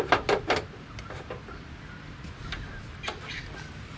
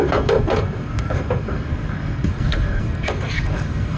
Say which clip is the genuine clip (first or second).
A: first